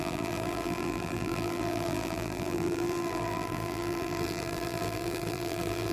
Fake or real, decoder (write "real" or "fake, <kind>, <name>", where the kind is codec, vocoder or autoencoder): fake, vocoder, BigVGAN v2